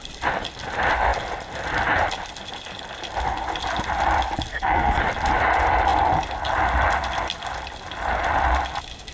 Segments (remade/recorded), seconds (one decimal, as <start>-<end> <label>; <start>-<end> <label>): 0.0-4.5 recorded; 4.5-5.0 remade; 5.0-9.1 recorded